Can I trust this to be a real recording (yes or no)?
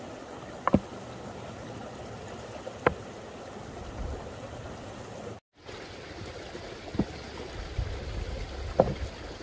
yes